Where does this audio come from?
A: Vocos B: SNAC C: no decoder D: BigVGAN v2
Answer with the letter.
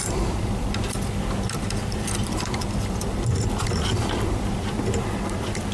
D